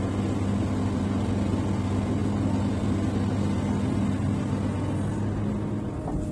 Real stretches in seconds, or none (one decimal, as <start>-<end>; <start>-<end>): 0.0-6.3